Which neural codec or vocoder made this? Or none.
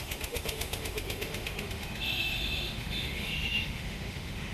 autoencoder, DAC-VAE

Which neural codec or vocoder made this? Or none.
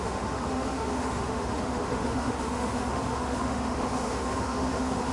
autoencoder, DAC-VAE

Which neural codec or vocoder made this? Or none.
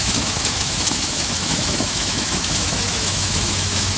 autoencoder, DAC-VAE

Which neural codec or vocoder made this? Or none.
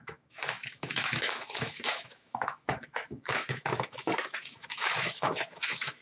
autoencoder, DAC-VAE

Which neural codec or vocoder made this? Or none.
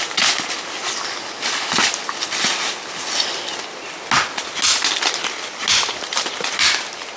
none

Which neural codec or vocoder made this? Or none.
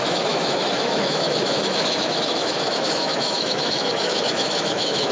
autoencoder, DAC-VAE